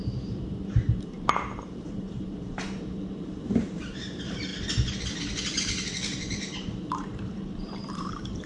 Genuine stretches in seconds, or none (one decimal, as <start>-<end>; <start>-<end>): 4.5-5.2